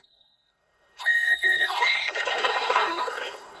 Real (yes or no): no